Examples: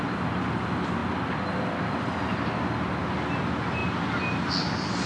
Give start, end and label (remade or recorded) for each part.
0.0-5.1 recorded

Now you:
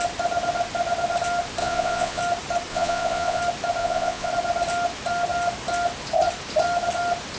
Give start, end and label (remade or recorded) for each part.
0.0-1.6 recorded; 1.6-2.2 remade; 2.2-2.7 recorded; 2.7-3.4 remade; 3.4-3.8 recorded; 3.8-4.3 remade; 4.3-7.4 recorded

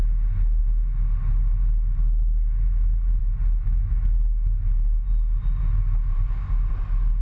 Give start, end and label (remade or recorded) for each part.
0.0-7.2 recorded

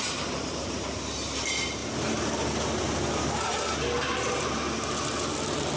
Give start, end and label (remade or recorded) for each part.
0.0-5.8 recorded

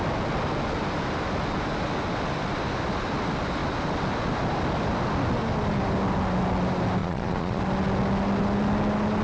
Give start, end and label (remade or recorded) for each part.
0.0-7.0 recorded; 7.0-7.6 remade; 7.6-9.2 recorded

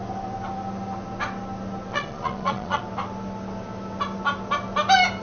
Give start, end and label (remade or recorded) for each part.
0.0-1.9 recorded; 1.9-2.8 remade; 2.8-5.2 recorded